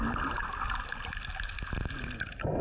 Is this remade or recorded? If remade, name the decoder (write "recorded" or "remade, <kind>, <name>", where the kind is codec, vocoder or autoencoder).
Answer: recorded